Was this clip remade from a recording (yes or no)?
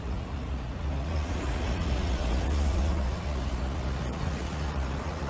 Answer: yes